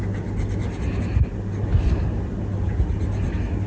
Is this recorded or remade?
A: recorded